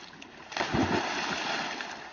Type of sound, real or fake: real